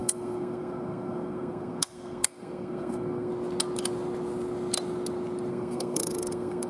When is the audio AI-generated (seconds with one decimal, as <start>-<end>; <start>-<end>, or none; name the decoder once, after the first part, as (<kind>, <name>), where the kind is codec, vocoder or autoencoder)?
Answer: 0.0-3.3 (codec, SNAC); 5.5-6.7